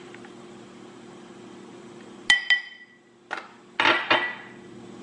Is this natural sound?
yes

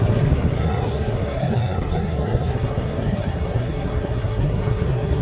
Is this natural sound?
no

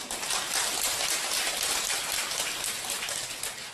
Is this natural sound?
yes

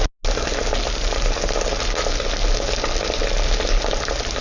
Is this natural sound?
yes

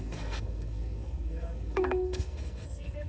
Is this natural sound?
no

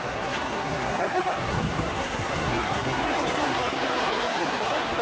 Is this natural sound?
no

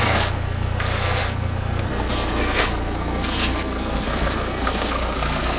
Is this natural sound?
no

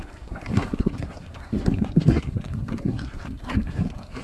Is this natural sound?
no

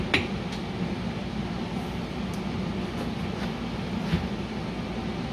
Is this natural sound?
yes